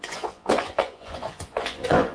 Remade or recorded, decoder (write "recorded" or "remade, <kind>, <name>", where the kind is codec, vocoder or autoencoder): remade, vocoder, Vocos